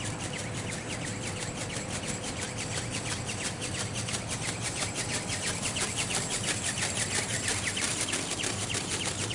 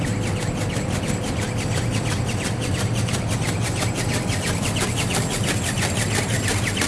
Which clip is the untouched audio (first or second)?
second